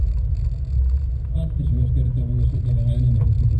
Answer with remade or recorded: recorded